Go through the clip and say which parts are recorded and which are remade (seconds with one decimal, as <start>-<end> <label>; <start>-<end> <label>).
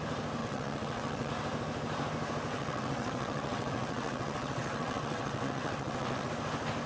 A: 0.0-0.4 recorded; 0.4-1.3 remade; 1.3-2.5 recorded; 2.5-6.3 remade; 6.3-6.9 recorded